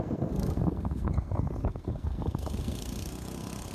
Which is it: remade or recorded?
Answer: remade